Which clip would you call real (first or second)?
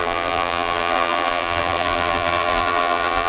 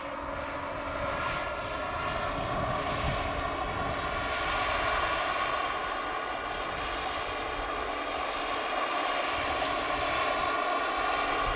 second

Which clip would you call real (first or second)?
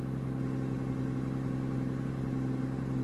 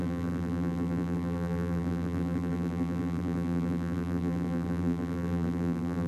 first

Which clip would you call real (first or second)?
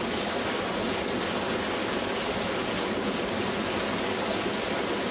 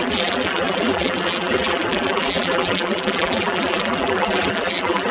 first